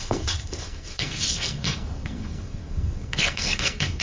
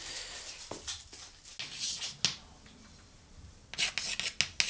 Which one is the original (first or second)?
second